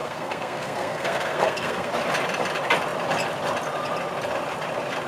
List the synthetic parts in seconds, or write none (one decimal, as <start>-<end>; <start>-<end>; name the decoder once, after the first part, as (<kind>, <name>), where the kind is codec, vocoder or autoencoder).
0.0-1.9 (codec, SNAC)